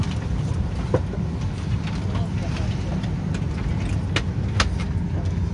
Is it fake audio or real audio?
real